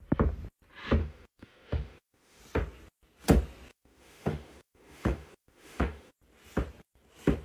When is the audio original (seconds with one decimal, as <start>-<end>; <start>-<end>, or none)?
0.0-1.0; 2.4-3.7; 6.1-7.4